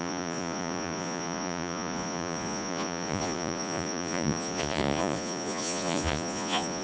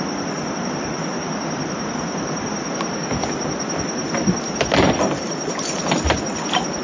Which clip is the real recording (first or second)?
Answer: second